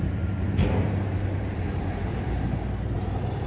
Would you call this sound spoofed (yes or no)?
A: yes